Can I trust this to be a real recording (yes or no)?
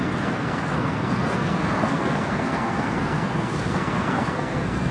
no